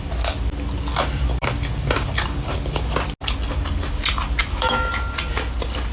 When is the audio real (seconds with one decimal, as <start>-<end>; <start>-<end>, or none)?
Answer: 0.0-4.4; 4.9-5.9